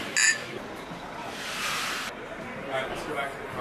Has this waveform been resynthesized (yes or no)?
no